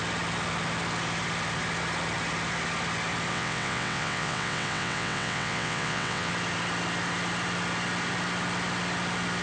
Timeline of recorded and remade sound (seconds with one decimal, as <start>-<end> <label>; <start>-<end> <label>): 0.0-3.3 recorded; 3.3-6.3 remade; 6.3-9.4 recorded